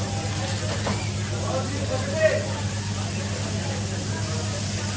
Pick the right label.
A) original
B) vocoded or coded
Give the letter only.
A